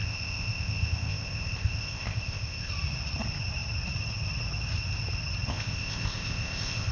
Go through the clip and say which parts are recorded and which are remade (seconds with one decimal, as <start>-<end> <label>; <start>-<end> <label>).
0.0-2.7 remade; 2.7-5.5 recorded; 5.5-6.9 remade